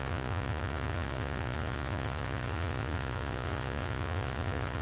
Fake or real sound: fake